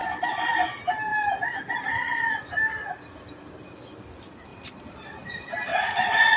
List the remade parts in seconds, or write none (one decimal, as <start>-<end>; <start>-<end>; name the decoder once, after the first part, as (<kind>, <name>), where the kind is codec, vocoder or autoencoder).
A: 5.7-6.4 (vocoder, Vocos)